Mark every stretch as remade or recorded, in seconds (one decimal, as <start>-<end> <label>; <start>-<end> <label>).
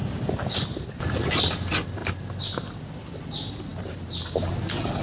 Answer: 0.0-5.0 recorded